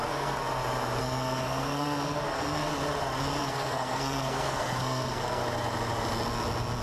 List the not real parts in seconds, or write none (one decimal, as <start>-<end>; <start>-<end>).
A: 0.0-0.4; 1.0-2.7; 3.4-5.4